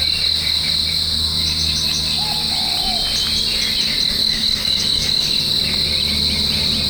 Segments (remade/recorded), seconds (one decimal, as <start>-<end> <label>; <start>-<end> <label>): 0.0-4.2 recorded; 4.2-5.4 remade; 5.4-6.9 recorded